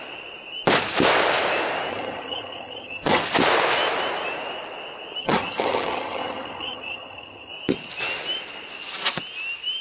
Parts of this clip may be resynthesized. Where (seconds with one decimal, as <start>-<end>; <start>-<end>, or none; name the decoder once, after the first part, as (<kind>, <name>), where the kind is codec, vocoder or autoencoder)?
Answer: 1.9-3.2 (vocoder, HiFi-GAN); 5.2-7.5